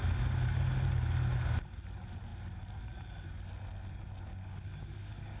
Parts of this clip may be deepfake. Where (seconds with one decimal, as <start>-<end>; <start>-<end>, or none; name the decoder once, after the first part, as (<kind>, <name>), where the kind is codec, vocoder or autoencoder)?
4.3-5.4 (codec, DAC)

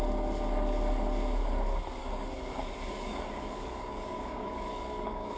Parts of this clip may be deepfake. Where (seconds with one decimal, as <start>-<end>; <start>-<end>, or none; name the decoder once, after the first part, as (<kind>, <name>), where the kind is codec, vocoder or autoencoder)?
2.0-5.4 (codec, DAC)

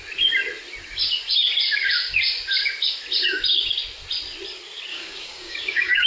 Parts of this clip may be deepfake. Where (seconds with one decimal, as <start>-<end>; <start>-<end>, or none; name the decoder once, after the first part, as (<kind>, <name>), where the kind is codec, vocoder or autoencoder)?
4.9-6.1 (codec, DAC)

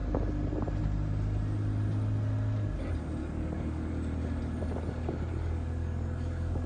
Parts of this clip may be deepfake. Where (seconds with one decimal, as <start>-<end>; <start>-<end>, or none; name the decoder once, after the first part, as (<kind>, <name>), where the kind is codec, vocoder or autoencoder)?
3.2-3.9 (codec, DAC); 5.3-6.7

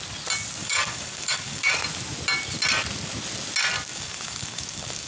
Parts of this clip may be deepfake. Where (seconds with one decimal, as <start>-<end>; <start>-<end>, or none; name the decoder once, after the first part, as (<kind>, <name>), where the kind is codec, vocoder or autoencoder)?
0.6-1.7 (codec, DAC); 3.9-5.1

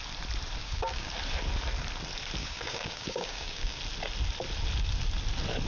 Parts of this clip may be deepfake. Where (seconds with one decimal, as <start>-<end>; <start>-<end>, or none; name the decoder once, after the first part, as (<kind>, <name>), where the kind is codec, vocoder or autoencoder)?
0.6-1.1 (codec, DAC); 2.4-3.8